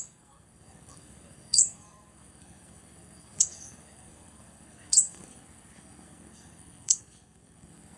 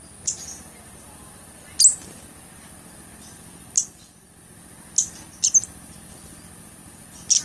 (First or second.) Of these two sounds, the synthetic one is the first